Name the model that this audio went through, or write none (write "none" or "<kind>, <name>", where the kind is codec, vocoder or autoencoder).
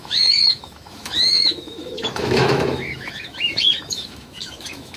autoencoder, DAC-VAE